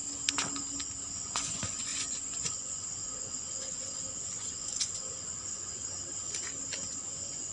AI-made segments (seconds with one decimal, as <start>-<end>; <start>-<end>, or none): 1.1-5.8; 6.9-7.5